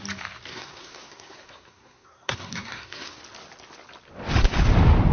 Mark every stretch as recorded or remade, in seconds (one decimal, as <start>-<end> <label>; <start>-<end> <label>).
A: 0.0-0.5 recorded; 0.5-3.2 remade; 3.2-5.1 recorded